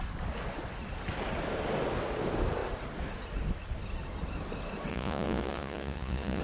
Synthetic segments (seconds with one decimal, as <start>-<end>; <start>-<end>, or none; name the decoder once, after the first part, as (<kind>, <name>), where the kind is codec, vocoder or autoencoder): 4.9-6.4 (vocoder, Vocos)

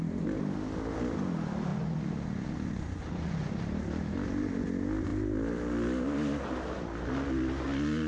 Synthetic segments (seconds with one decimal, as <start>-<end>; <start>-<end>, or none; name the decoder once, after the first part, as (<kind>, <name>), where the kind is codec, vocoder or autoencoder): 1.7-3.5 (vocoder, Vocos)